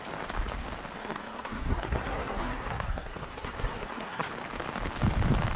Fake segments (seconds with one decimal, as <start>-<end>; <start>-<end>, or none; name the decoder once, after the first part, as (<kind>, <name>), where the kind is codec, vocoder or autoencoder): 1.0-4.3 (codec, SNAC)